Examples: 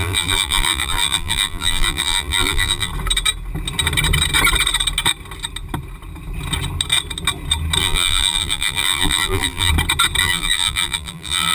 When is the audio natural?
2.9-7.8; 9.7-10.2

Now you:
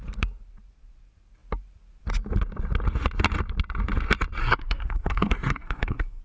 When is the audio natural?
0.0-4.4

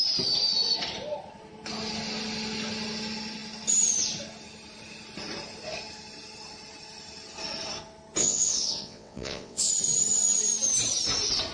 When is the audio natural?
0.0-8.2; 9.7-11.5

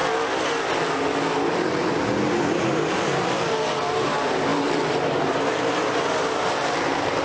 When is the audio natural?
0.0-2.4

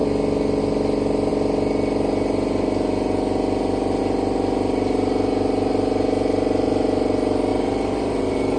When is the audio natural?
0.0-7.5

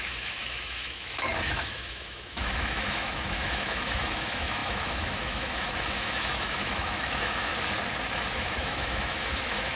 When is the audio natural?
7.5-8.4

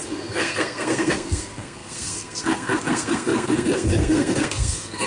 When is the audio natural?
none

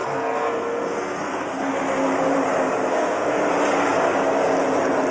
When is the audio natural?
1.7-2.9; 3.5-5.1